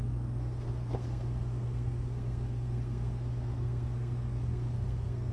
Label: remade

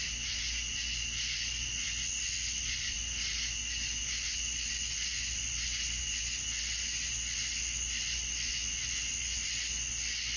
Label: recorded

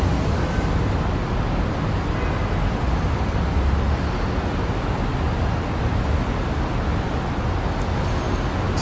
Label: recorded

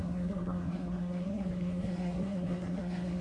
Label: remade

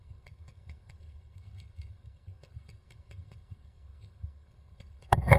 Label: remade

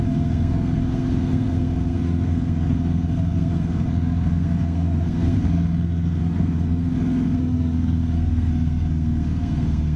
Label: remade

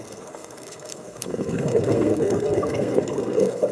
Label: remade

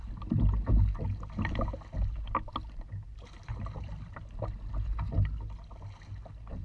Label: recorded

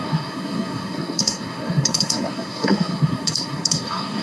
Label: remade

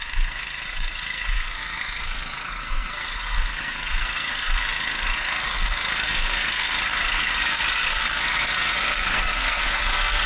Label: remade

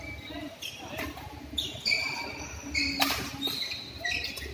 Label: recorded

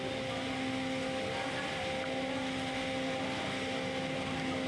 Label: recorded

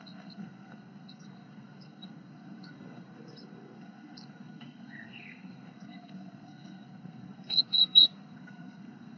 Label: remade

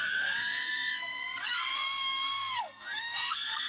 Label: remade